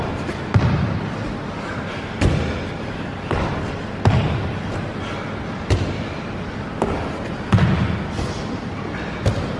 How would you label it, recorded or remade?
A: recorded